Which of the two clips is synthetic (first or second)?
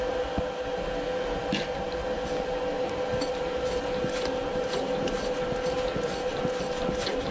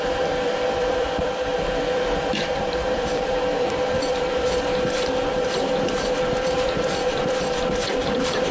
second